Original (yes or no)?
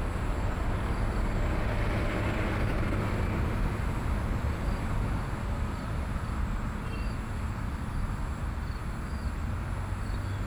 yes